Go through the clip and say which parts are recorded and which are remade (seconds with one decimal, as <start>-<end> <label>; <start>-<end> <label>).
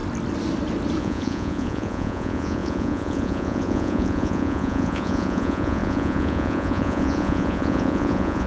0.0-1.0 recorded; 1.0-8.5 remade